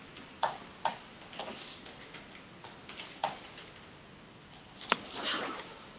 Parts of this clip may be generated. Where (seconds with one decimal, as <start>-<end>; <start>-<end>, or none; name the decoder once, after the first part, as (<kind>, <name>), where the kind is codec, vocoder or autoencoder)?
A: none